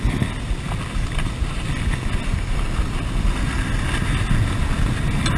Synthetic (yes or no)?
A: no